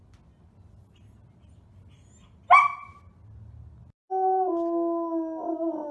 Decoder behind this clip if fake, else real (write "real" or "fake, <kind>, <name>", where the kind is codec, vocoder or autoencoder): real